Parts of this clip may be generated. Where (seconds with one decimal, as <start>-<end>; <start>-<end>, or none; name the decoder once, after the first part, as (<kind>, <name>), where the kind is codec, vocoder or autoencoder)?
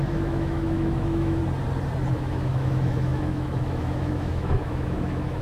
0.0-1.4 (autoencoder, DAC-VAE); 2.1-5.4